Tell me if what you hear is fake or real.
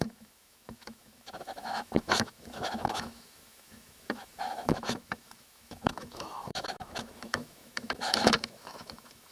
fake